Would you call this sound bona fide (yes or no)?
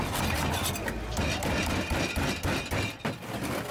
yes